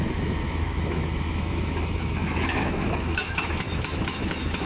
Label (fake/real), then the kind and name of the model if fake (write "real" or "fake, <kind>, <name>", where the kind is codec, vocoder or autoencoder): fake, autoencoder, DAC-VAE